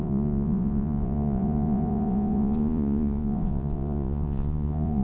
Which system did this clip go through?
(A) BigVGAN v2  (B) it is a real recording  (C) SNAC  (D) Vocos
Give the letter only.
D